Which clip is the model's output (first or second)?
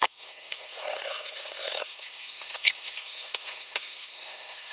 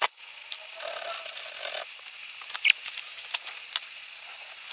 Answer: first